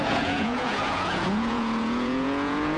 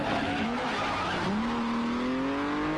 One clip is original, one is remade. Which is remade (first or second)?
first